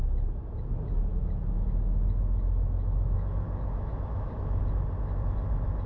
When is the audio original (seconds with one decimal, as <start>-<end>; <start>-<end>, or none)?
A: 0.0-1.1; 4.6-5.9